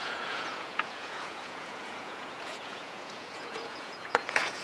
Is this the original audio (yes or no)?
no